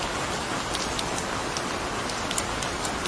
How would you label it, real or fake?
real